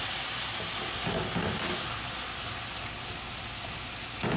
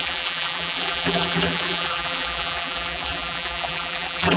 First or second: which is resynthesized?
second